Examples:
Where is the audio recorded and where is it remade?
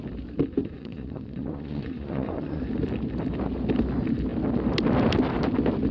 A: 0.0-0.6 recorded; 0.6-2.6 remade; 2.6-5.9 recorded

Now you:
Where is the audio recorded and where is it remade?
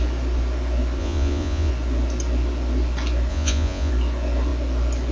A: 0.0-1.0 recorded; 1.0-1.7 remade; 1.7-3.3 recorded; 3.3-3.9 remade; 3.9-5.1 recorded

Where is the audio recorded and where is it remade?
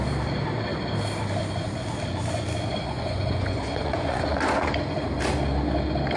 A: 0.0-2.7 recorded; 2.7-4.7 remade; 4.7-6.2 recorded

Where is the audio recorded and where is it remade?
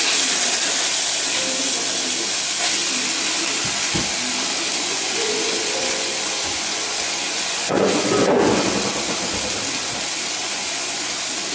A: 0.0-4.7 recorded; 4.7-8.6 remade; 8.6-10.4 recorded; 10.4-11.1 remade; 11.1-11.5 recorded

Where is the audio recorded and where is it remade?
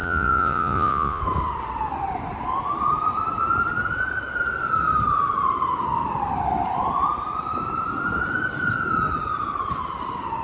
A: 0.0-1.2 remade; 1.2-10.4 recorded